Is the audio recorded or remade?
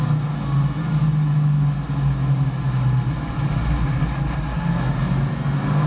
recorded